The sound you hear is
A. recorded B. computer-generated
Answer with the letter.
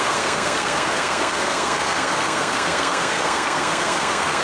B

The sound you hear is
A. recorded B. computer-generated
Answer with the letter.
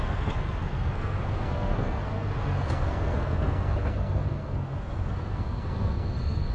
B